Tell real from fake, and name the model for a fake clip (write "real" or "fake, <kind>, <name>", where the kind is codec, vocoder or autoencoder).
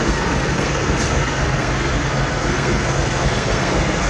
fake, codec, SNAC